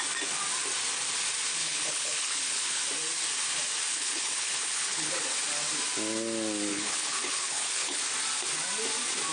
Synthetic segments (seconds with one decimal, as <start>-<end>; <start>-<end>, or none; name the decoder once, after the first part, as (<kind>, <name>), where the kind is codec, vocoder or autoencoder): 1.6-2.8 (codec, HILCodec); 3.9-5.2; 6.7-8.0